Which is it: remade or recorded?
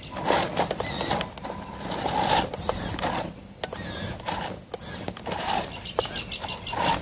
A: recorded